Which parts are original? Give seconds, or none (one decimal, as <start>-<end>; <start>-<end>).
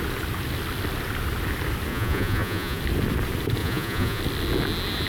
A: 0.0-1.9; 2.8-3.6; 4.2-5.1